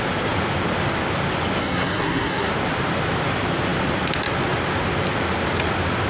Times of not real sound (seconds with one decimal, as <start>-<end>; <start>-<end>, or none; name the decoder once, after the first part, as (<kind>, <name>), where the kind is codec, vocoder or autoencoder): 1.6-2.5 (codec, SNAC)

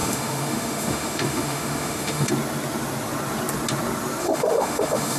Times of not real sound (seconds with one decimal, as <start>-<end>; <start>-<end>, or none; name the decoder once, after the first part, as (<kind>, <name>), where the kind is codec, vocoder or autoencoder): 0.0-2.3 (autoencoder, DAC-VAE); 4.2-5.2

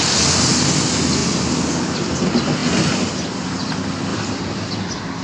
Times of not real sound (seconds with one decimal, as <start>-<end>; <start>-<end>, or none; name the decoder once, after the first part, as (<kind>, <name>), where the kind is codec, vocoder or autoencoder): 1.2-2.1 (vocoder, BigVGAN v2); 2.6-3.1; 4.1-4.7